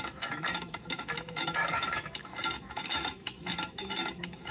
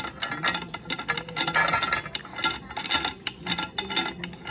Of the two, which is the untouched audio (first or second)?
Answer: second